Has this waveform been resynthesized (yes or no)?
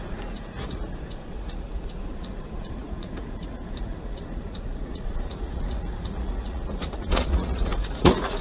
yes